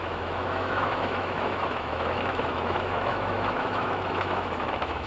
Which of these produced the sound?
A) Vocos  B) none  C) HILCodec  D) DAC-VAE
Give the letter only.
D